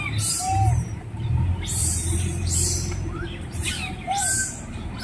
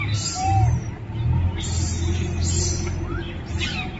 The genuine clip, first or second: second